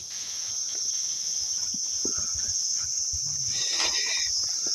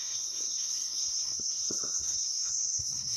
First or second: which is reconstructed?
second